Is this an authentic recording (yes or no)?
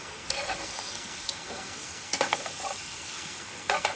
no